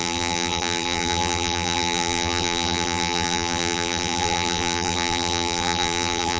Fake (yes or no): yes